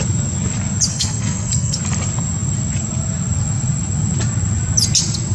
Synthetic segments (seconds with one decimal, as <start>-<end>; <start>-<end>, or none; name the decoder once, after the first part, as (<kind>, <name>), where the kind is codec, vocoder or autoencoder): 0.9-1.8 (codec, SNAC)